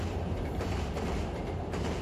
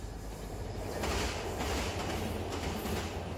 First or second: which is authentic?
second